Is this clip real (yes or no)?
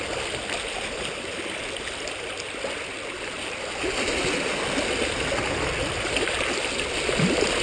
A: yes